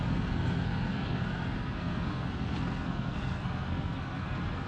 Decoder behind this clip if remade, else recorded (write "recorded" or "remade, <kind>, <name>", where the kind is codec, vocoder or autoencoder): remade, codec, SNAC